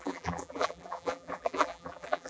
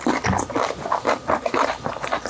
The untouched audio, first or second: second